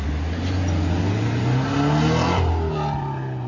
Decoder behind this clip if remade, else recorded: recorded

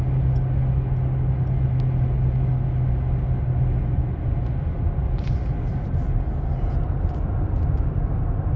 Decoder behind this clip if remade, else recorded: recorded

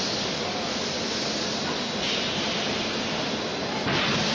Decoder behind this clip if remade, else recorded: recorded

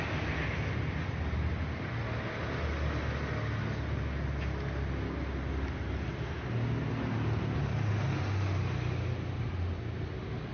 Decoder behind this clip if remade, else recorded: recorded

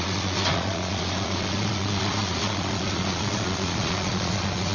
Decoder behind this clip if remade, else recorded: remade, vocoder, Vocos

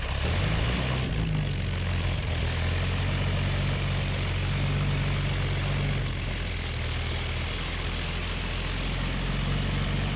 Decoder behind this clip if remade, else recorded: recorded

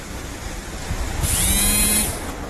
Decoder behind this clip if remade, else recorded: recorded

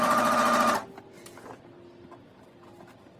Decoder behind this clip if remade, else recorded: recorded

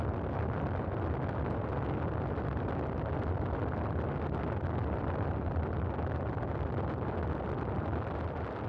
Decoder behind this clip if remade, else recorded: recorded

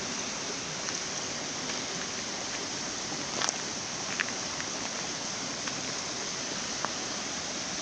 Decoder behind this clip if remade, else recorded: recorded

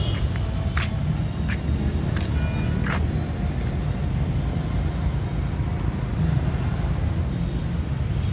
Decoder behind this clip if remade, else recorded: recorded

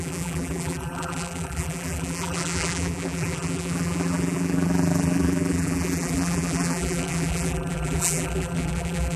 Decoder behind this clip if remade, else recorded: remade, vocoder, BigVGAN v2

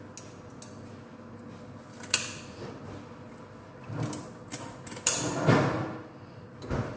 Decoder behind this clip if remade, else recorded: recorded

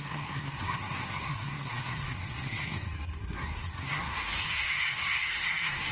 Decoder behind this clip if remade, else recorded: remade, codec, SNAC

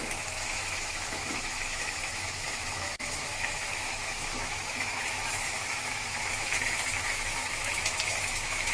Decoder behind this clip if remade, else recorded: remade, autoencoder, DAC-VAE